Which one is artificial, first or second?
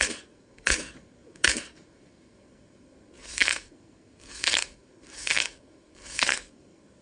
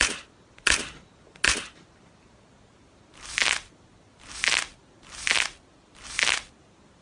first